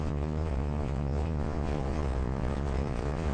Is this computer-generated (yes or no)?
yes